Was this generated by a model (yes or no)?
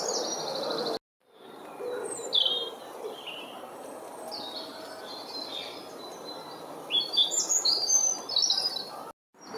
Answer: no